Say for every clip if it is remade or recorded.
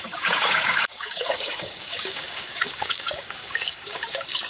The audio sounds remade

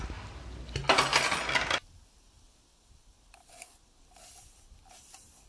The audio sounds recorded